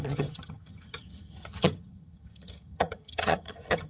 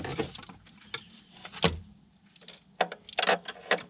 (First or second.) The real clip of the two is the second